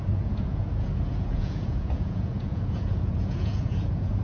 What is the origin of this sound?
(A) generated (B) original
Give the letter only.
A